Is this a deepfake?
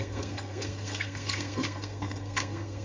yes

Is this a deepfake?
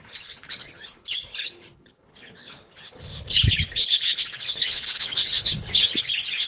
yes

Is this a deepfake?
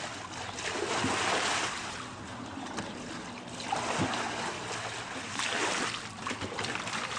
no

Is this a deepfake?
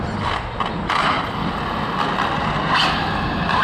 no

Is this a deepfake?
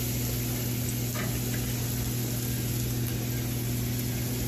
no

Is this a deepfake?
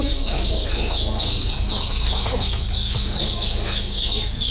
yes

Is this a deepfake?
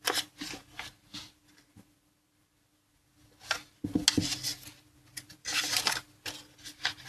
no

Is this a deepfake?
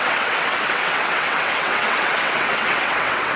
yes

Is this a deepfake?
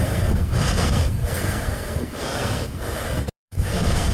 yes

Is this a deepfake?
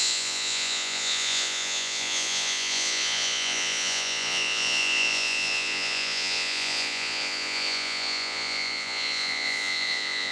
yes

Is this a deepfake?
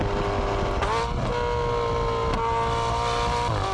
no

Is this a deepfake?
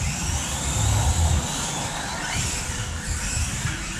no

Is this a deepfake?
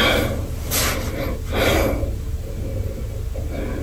no